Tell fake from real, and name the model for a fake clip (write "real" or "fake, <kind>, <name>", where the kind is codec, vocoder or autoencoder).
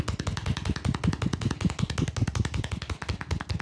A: real